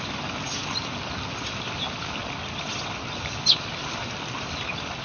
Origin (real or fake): real